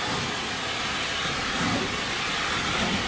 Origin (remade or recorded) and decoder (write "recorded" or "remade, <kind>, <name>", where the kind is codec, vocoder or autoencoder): recorded